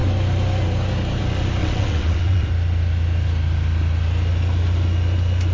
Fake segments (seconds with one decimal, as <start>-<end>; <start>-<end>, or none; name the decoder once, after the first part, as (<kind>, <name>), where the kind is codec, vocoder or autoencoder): 1.6-2.5 (vocoder, WaveNeXt)

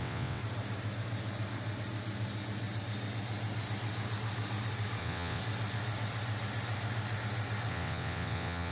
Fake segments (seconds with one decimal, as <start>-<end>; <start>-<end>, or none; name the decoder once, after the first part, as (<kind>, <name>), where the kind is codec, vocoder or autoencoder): 0.0-0.4 (vocoder, WaveNeXt); 5.0-5.4; 7.7-8.7

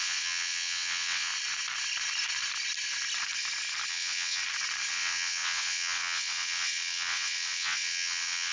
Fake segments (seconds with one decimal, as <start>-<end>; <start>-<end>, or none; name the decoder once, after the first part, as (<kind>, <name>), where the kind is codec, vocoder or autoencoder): 0.0-1.3 (vocoder, WaveNeXt); 3.9-4.4; 4.9-8.5